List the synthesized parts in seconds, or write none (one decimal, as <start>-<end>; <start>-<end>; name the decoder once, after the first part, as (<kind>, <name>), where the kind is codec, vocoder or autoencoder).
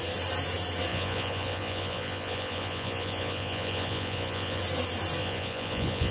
0.9-4.6 (vocoder, Vocos); 5.2-6.1